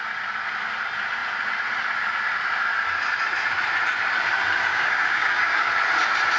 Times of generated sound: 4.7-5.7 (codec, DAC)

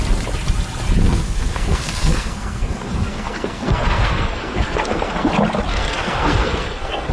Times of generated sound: 1.0-5.3 (codec, SNAC); 5.7-7.1